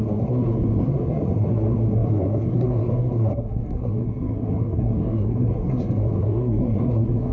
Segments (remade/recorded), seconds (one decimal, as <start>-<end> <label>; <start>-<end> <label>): 0.0-7.3 remade